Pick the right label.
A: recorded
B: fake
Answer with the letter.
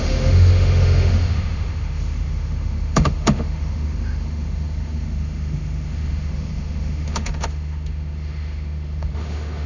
B